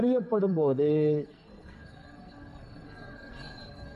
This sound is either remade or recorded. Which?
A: remade